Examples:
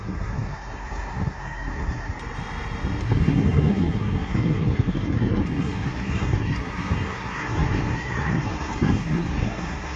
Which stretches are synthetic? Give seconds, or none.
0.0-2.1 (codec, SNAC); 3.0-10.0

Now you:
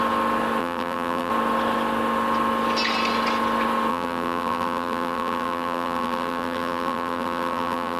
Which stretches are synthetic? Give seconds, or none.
0.6-1.3 (vocoder, BigVGAN v2); 3.9-8.0

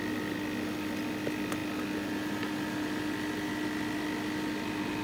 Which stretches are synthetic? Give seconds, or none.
none

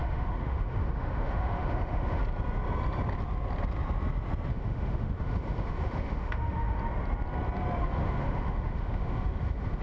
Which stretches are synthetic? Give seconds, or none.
0.0-2.2 (autoencoder, DAC-VAE); 4.5-6.8; 7.8-9.8